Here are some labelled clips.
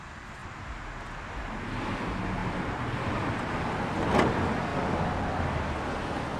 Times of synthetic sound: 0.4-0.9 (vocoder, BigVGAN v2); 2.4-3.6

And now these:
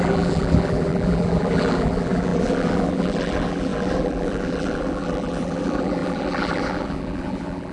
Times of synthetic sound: 0.0-7.7 (vocoder, BigVGAN v2)

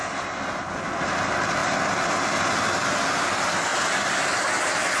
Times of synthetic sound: 1.6-2.4 (vocoder, BigVGAN v2); 3.7-4.4

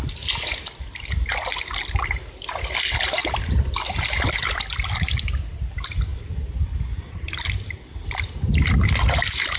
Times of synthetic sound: 3.2-5.6 (vocoder, BigVGAN v2); 6.1-7.4

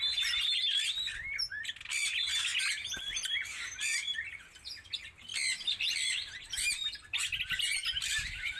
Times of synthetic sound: 5.3-7.4 (vocoder, BigVGAN v2)

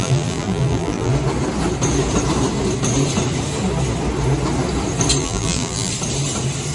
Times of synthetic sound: 0.0-1.1 (vocoder, BigVGAN v2); 5.2-5.9

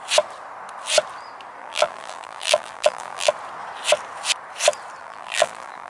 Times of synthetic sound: 1.6-3.3 (vocoder, BigVGAN v2); 5.0-5.9

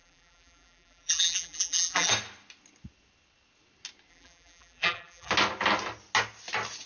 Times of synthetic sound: 0.0-2.1 (vocoder, BigVGAN v2); 4.1-5.3